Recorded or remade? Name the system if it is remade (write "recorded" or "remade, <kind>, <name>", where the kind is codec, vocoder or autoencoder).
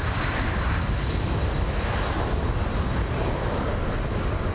recorded